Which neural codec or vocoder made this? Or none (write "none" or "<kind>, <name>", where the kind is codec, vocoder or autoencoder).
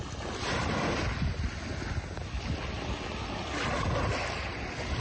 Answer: none